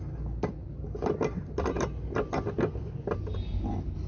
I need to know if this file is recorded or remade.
recorded